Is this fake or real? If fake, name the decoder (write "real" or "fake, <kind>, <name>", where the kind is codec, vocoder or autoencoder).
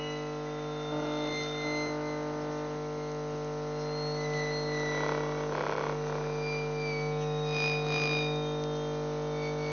real